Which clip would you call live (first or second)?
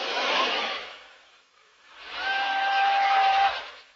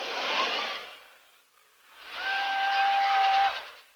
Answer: second